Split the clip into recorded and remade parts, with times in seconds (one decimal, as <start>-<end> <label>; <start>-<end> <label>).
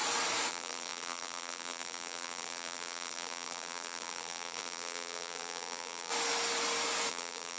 0.0-0.5 recorded; 0.5-6.1 remade; 6.1-7.1 recorded; 7.1-7.6 remade